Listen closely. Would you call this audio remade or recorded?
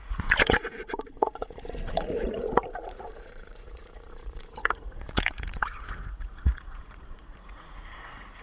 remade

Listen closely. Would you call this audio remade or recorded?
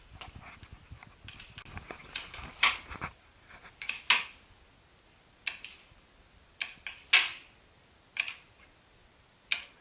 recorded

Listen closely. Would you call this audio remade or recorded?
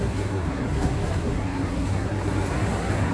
remade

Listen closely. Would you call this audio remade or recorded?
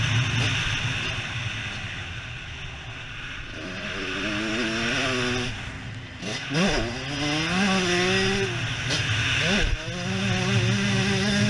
recorded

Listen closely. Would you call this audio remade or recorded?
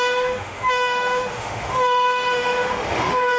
remade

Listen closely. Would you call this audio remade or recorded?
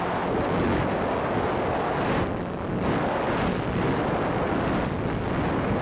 recorded